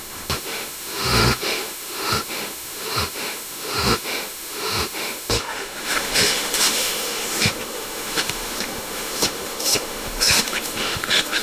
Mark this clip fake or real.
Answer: fake